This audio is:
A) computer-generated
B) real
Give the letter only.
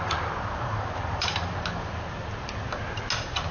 B